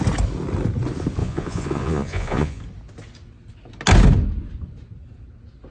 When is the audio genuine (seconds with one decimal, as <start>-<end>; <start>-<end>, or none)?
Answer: 0.0-1.2; 2.6-5.7